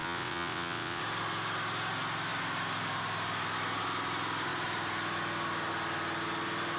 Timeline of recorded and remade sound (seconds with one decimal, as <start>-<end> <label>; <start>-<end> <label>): 0.0-1.0 remade; 1.0-6.8 recorded